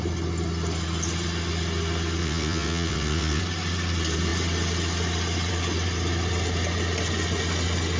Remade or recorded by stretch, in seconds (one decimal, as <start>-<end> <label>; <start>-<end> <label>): 0.0-2.2 recorded; 2.2-3.4 remade; 3.4-8.0 recorded